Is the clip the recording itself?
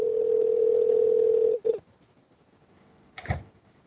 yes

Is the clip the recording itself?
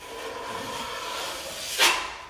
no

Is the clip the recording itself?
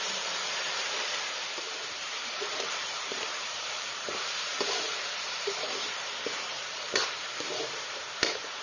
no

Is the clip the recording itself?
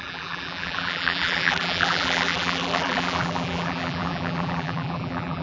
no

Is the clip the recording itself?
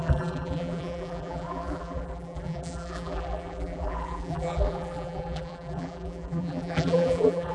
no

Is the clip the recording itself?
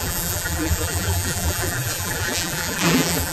no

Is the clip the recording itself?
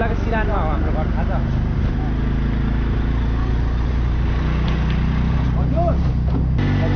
yes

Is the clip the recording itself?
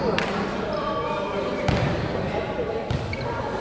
yes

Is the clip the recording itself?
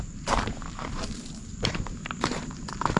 no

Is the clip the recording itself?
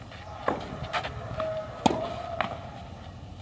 yes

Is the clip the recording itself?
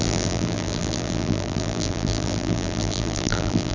no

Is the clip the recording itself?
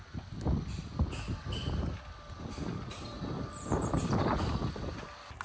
yes